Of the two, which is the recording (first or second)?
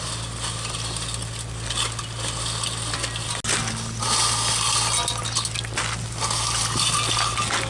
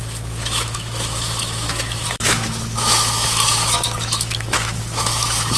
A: first